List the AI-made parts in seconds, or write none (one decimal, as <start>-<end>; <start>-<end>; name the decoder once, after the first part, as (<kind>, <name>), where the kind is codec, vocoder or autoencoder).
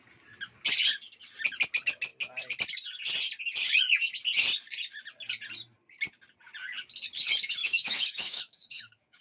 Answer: 7.6-9.2 (autoencoder, DAC-VAE)